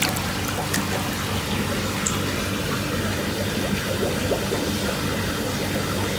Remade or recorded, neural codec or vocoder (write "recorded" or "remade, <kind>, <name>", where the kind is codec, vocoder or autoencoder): recorded